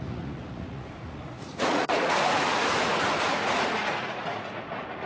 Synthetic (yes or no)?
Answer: yes